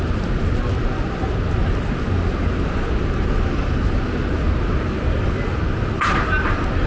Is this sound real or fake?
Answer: real